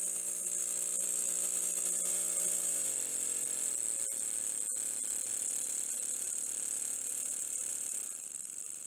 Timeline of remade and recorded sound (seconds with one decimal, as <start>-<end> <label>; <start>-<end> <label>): 0.0-8.9 recorded